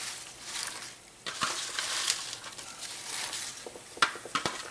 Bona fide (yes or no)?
no